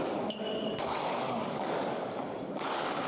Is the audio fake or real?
fake